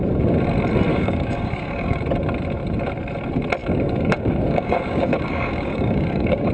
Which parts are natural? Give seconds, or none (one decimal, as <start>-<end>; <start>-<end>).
0.0-0.9; 2.0-3.6